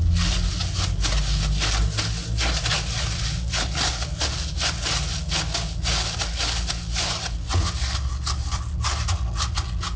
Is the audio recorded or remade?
recorded